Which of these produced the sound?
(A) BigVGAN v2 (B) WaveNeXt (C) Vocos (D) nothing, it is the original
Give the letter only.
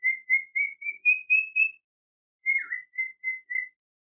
D